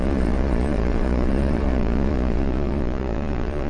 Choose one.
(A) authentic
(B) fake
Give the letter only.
B